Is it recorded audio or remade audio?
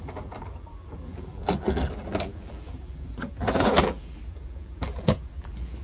remade